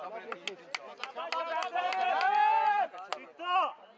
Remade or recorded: recorded